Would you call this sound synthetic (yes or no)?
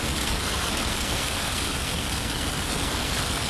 yes